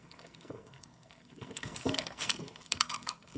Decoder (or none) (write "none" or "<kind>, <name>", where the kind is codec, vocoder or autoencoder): codec, SNAC